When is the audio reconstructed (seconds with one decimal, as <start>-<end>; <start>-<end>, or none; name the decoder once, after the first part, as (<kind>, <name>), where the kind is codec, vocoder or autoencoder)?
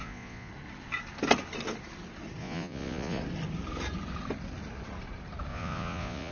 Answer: 0.0-0.5 (vocoder, Vocos); 2.4-3.2; 5.5-6.3